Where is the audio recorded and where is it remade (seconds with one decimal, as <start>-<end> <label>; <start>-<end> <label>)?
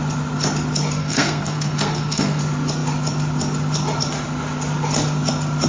0.0-1.0 recorded; 1.0-2.4 remade; 2.4-5.7 recorded